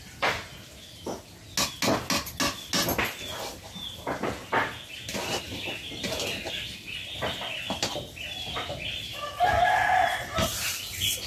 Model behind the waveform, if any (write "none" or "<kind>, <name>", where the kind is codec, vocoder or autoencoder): none